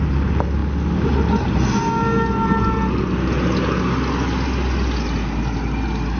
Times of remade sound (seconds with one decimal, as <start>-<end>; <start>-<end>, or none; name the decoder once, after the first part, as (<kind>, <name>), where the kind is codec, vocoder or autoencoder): none